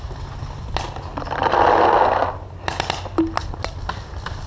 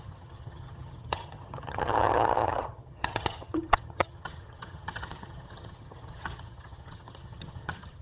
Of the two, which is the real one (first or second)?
first